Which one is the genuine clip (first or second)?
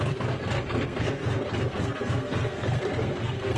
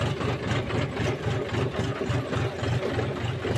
second